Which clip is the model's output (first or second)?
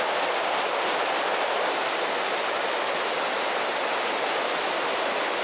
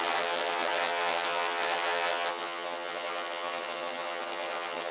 second